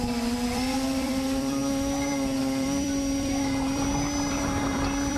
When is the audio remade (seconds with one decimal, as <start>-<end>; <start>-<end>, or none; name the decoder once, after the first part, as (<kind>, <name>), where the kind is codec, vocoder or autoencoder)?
0.0-1.6 (vocoder, BigVGAN v2); 2.4-5.2